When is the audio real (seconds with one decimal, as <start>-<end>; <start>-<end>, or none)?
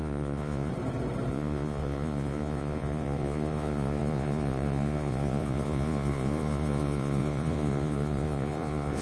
0.7-1.3